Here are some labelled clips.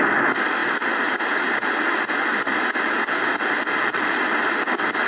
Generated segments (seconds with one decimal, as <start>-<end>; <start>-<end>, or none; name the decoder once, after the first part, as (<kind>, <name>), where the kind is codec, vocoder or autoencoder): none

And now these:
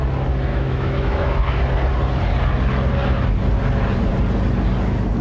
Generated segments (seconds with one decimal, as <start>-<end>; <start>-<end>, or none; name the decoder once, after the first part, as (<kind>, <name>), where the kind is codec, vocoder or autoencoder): 0.5-1.6 (autoencoder, DAC-VAE)

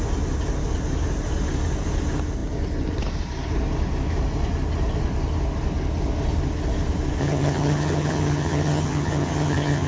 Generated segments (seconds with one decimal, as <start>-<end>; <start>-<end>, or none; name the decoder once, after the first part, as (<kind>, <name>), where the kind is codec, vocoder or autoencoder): 7.2-9.9 (vocoder, HiFi-GAN)